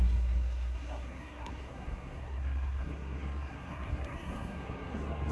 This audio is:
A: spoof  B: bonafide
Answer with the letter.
A